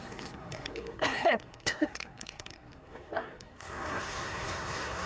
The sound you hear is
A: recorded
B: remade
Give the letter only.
B